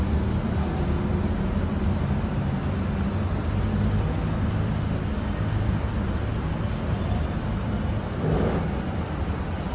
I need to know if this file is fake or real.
real